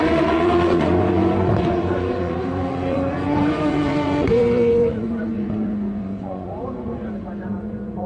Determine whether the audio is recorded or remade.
remade